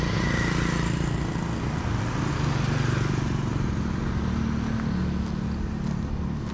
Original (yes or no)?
yes